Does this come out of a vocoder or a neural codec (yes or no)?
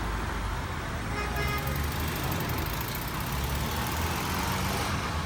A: no